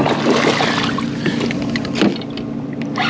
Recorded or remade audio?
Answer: recorded